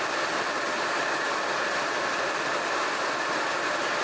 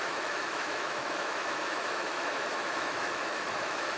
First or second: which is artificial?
second